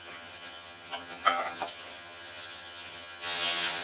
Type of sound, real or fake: fake